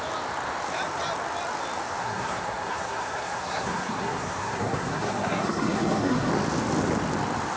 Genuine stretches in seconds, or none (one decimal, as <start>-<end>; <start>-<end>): 0.0-2.0; 6.3-7.6